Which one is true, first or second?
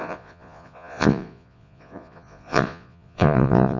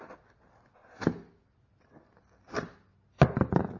second